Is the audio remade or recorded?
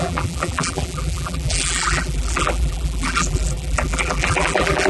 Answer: remade